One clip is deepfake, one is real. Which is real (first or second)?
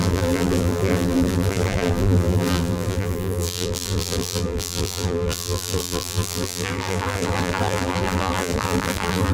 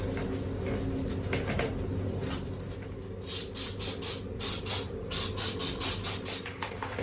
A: second